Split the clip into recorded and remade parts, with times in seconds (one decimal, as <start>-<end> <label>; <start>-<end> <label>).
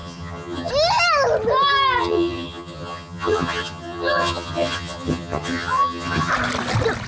0.0-0.7 remade; 0.7-2.0 recorded; 2.0-6.3 remade; 6.3-7.1 recorded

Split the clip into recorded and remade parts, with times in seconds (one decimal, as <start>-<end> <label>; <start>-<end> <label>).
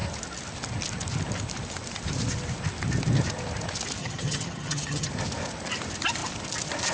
0.0-4.0 recorded; 4.0-5.1 remade; 5.1-6.9 recorded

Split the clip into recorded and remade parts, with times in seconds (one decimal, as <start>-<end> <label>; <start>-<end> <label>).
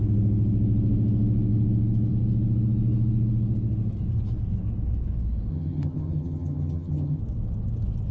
0.0-5.5 recorded; 5.5-7.2 remade; 7.2-8.1 recorded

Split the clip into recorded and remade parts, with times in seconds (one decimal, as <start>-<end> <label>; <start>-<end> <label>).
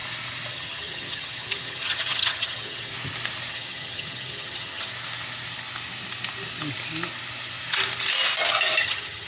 0.0-0.5 recorded; 0.5-2.9 remade; 2.9-3.5 recorded; 3.5-4.9 remade; 4.9-8.8 recorded; 8.8-9.3 remade